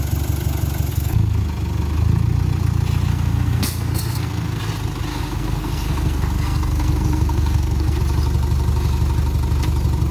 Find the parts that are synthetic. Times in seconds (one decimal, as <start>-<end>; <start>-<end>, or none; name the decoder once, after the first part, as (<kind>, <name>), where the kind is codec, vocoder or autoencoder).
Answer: 0.9-1.4 (codec, SNAC); 3.1-4.6; 5.1-8.0